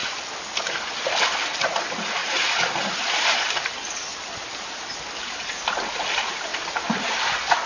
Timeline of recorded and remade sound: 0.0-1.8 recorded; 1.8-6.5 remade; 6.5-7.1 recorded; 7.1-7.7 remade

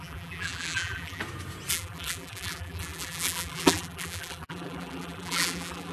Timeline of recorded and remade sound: 0.0-1.2 remade; 1.2-1.7 recorded; 1.7-5.9 remade

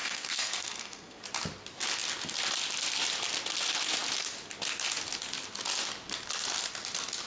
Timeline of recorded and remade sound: 0.0-1.2 remade; 1.2-7.3 recorded

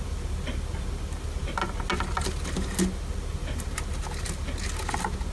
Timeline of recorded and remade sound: 0.0-5.3 recorded